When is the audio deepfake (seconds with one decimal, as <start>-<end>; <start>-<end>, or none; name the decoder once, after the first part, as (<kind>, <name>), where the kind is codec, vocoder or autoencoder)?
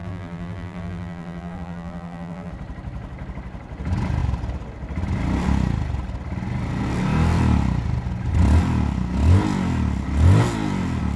0.0-2.5 (vocoder, BigVGAN v2)